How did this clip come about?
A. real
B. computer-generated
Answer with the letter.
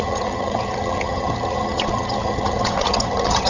B